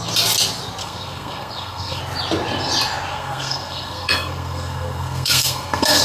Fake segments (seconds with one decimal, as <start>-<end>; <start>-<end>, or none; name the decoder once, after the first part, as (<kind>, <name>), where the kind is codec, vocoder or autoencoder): 0.8-2.0 (codec, SNAC); 3.1-6.0